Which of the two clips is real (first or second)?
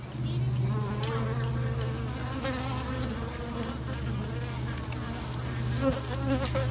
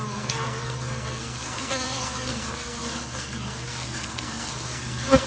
first